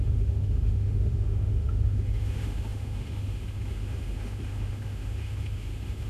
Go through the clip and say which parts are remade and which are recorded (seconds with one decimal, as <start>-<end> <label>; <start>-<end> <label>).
0.0-6.1 remade